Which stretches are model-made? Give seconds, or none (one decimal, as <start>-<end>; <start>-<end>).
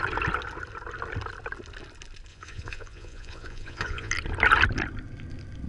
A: 2.3-4.1